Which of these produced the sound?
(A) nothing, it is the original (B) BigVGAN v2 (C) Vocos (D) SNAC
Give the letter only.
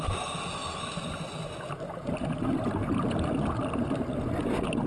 A